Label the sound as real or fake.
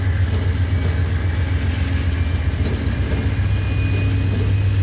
real